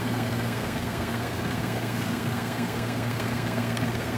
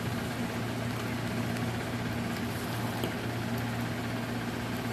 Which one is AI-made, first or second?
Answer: first